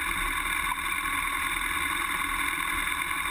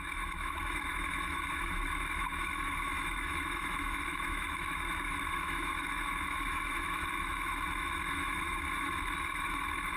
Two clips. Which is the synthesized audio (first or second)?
second